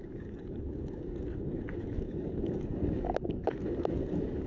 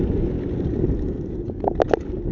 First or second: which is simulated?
first